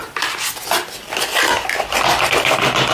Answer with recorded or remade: recorded